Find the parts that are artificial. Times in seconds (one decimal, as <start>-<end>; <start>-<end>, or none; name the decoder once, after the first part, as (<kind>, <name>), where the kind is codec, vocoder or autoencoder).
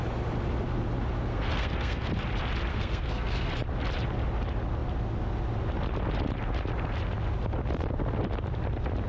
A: 1.3-2.1 (codec, SNAC); 2.7-3.5